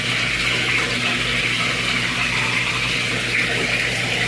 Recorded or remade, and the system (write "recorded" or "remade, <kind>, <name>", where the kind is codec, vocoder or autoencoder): recorded